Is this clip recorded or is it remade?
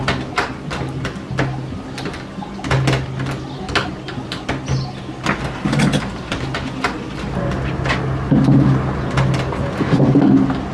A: recorded